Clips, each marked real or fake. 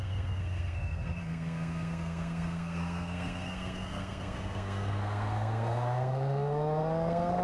fake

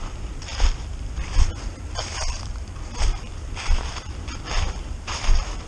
fake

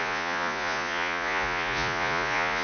fake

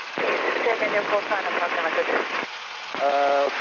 real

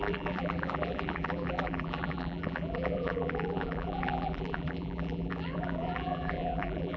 fake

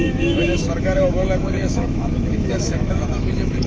fake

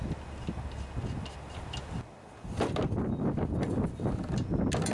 real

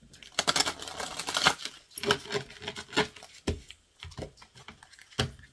real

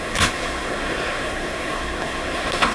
fake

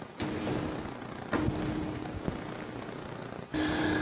real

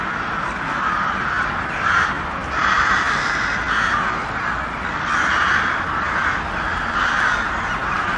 real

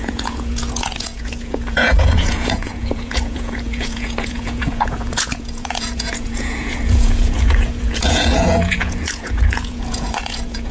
fake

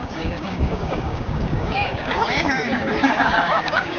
fake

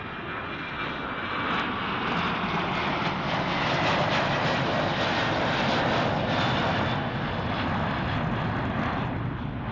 real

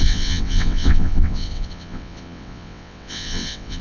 fake